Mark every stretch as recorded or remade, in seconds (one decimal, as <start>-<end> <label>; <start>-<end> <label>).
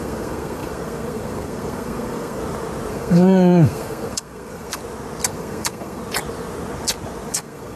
0.0-2.4 remade; 2.4-2.9 recorded; 2.9-4.8 remade; 4.8-5.3 recorded; 5.3-6.0 remade; 6.0-7.3 recorded; 7.3-7.8 remade